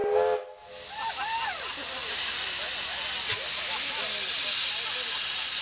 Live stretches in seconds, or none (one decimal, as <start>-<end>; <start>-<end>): 0.0-5.6